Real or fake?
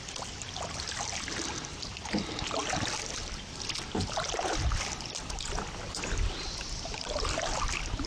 real